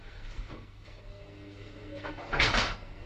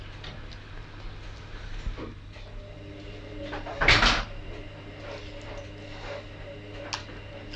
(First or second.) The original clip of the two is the second